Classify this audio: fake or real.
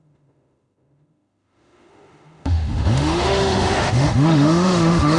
fake